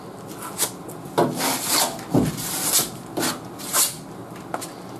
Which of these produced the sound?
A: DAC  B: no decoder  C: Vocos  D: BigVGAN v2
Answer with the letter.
B